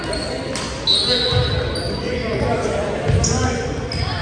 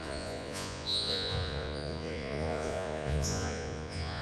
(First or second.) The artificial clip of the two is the second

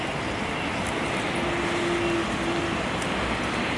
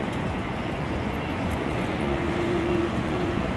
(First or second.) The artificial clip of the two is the second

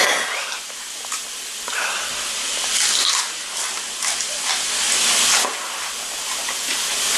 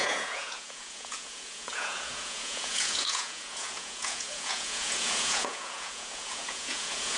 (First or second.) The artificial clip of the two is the second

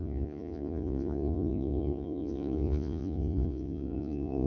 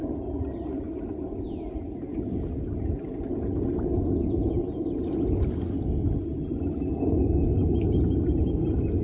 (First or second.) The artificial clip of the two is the first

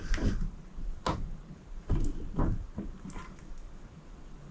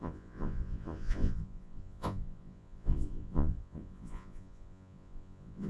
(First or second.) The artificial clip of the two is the second